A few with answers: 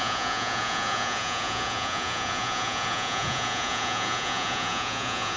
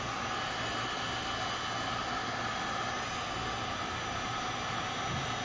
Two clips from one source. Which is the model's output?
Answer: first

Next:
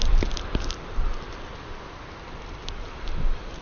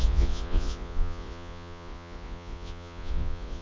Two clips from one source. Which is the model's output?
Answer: second